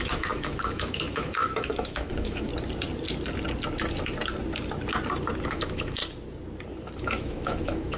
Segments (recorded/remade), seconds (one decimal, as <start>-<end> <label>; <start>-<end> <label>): 0.0-2.5 remade; 2.5-5.5 recorded; 5.5-6.0 remade; 6.0-7.0 recorded; 7.0-8.0 remade